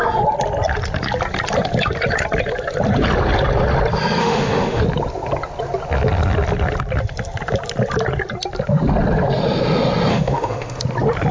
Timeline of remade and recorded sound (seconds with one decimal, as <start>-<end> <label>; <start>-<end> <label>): 0.0-4.2 recorded; 4.2-4.8 remade; 4.8-10.1 recorded; 10.1-10.8 remade; 10.8-11.3 recorded